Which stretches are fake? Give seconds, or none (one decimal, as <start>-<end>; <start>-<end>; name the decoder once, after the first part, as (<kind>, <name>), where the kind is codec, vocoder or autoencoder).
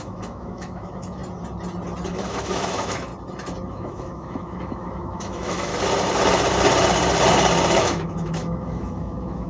0.0-1.2 (autoencoder, DAC-VAE); 2.1-3.1; 3.7-5.7; 7.8-9.5